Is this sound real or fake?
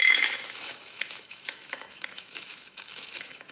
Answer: fake